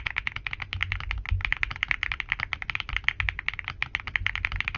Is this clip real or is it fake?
real